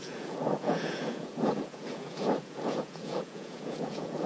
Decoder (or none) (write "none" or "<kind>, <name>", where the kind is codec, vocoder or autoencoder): vocoder, Vocos